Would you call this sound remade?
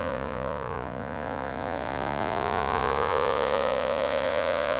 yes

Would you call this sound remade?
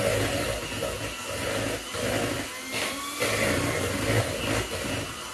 no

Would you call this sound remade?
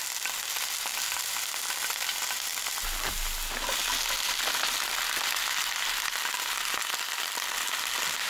no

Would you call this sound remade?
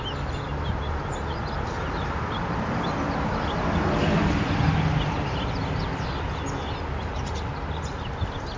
no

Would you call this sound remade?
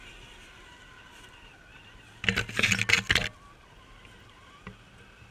no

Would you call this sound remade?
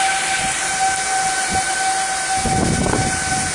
no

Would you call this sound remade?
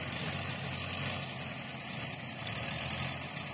no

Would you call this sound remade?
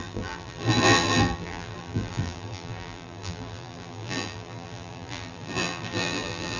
yes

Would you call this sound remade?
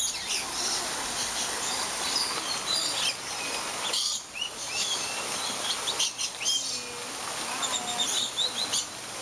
no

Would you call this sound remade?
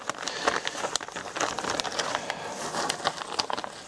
no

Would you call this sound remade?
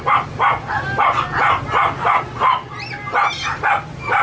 no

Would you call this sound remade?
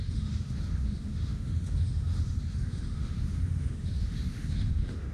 yes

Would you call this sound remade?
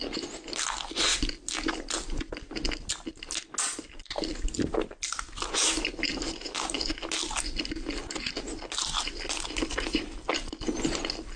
no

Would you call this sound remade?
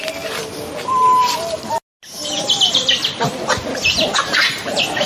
no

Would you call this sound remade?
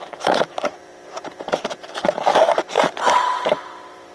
yes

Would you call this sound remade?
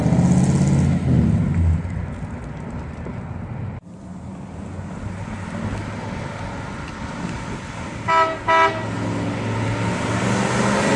no